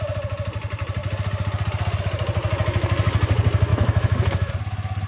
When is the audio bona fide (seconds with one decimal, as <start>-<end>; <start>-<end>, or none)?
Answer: 0.0-3.7; 4.5-5.1